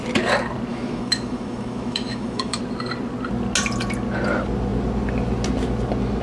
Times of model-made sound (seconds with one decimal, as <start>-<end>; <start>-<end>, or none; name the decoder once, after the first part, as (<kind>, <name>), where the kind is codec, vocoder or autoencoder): 0.7-2.6 (autoencoder, DAC-VAE)